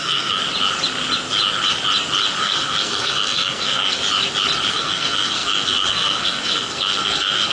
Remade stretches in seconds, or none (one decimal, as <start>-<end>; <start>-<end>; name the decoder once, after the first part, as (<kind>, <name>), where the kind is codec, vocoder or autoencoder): 0.0-0.4 (codec, SNAC); 2.4-4.0; 4.7-7.5